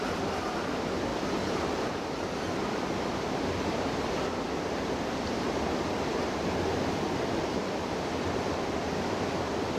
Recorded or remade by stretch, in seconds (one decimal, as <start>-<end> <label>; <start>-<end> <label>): 0.0-9.8 recorded